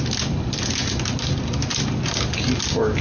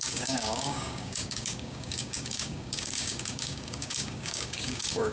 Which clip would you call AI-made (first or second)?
second